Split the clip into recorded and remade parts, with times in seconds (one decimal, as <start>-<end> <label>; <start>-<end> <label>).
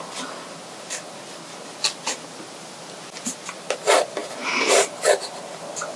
0.0-4.2 recorded; 4.2-5.0 remade; 5.0-6.0 recorded